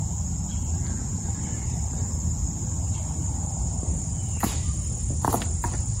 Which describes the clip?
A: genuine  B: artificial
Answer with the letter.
A